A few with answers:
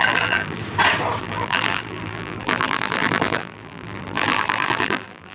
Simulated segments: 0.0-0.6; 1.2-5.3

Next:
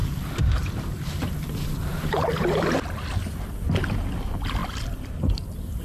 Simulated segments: 0.0-2.7; 4.6-5.8

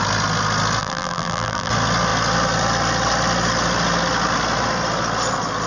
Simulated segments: 0.8-1.7

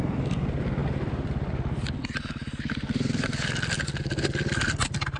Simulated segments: 0.8-2.2

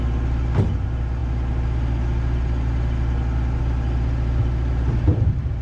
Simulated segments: none

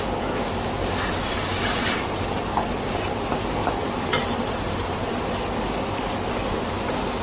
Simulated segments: 1.5-2.2; 3.6-5.4